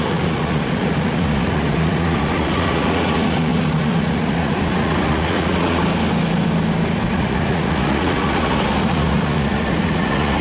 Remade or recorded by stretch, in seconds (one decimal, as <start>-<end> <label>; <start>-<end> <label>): 0.0-5.8 remade; 5.8-7.1 recorded; 7.1-10.4 remade